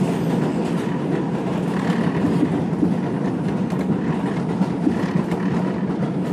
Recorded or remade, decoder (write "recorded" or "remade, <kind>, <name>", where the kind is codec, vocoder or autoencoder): recorded